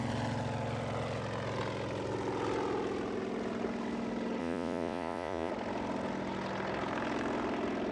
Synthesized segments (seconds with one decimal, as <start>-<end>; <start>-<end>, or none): 4.4-5.5